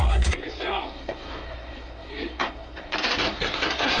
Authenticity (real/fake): fake